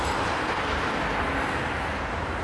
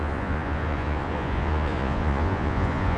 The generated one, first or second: second